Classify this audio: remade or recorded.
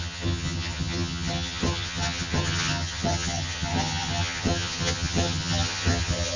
remade